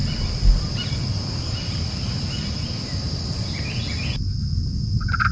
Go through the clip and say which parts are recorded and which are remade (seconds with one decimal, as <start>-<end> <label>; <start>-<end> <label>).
0.0-5.3 recorded